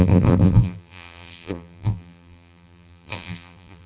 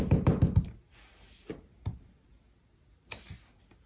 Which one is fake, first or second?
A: first